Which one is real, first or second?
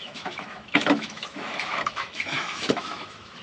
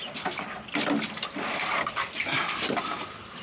second